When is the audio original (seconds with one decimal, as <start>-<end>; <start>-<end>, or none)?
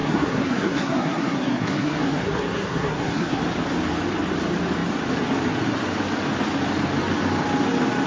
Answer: 3.4-8.1